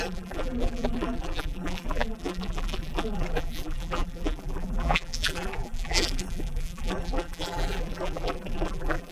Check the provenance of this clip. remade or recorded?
remade